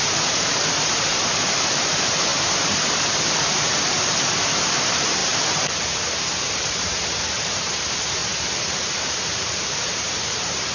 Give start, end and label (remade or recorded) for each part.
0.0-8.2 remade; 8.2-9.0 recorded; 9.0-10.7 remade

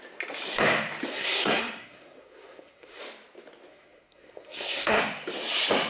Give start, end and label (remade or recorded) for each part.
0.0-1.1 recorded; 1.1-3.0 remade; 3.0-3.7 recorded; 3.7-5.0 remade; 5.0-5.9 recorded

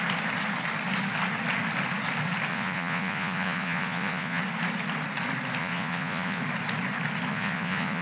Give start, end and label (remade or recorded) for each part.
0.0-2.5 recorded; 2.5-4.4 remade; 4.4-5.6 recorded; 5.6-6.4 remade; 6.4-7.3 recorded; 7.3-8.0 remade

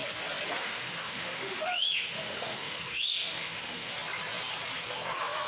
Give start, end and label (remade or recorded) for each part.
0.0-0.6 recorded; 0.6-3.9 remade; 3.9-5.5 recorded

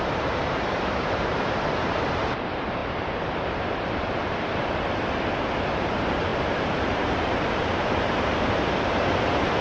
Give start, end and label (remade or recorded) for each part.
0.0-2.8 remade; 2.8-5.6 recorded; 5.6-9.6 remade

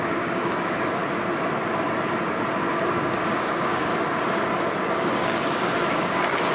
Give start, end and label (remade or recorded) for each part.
0.0-1.0 remade; 1.0-2.7 recorded; 2.7-3.9 remade; 3.9-5.2 recorded; 5.2-6.5 remade